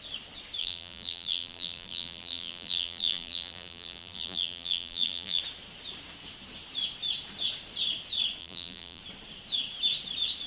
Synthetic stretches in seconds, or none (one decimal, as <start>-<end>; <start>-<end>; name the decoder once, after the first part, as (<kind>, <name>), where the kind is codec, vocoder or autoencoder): 0.6-5.4 (vocoder, BigVGAN v2); 8.4-9.0